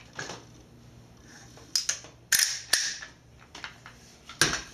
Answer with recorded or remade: recorded